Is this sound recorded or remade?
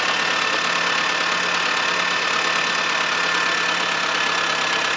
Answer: recorded